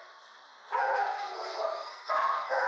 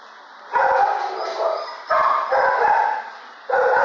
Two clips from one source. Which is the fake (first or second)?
first